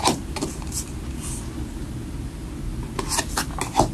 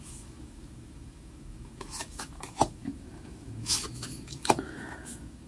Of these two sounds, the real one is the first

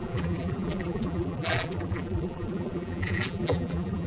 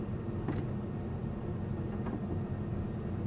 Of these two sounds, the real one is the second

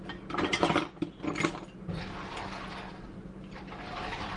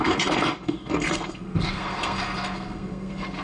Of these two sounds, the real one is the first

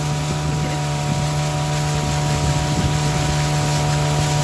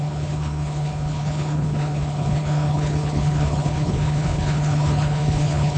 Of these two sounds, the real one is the first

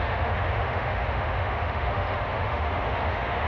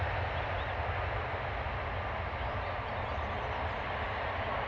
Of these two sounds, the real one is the second